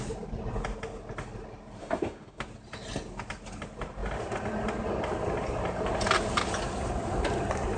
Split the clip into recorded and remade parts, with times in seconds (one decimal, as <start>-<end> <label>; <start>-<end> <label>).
0.0-1.8 recorded; 1.8-2.4 remade; 2.4-7.8 recorded